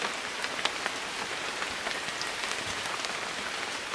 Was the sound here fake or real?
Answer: real